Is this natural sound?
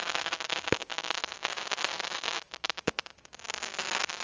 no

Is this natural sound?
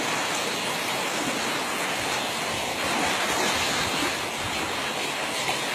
yes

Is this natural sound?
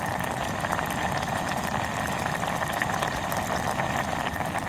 yes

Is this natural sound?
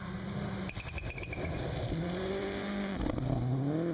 yes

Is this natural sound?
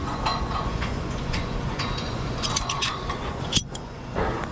no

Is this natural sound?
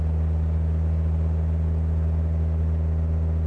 yes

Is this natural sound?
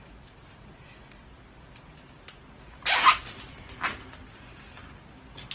yes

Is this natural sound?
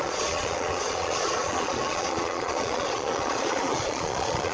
no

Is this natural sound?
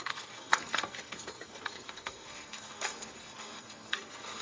no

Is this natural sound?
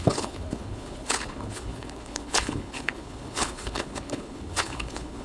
no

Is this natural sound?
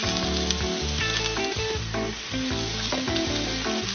yes